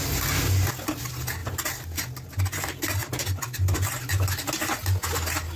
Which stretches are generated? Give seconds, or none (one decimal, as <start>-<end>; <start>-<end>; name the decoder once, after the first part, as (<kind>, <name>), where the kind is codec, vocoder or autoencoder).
3.0-4.1 (vocoder, BigVGAN v2)